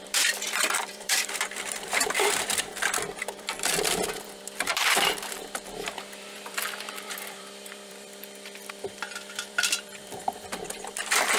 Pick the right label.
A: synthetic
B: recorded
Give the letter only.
A